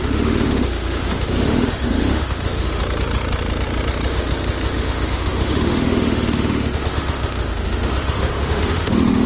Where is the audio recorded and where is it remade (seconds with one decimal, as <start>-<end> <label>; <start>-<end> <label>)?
0.0-2.8 remade; 2.8-4.1 recorded; 4.1-9.3 remade